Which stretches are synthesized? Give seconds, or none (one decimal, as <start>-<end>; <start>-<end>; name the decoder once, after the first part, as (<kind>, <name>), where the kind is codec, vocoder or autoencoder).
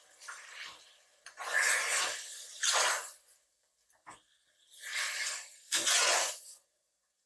1.1-2.0 (vocoder, Vocos); 5.5-7.3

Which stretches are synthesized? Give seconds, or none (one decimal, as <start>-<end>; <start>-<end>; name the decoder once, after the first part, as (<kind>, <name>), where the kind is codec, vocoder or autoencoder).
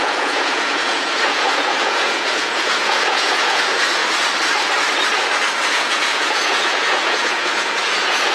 0.0-4.0 (vocoder, Vocos); 5.7-8.3